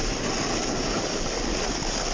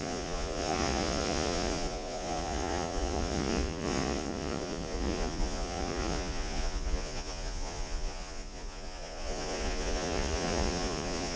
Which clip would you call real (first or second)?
first